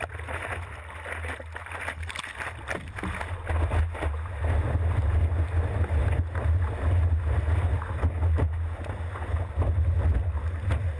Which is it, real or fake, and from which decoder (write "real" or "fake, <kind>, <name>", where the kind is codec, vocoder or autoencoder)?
real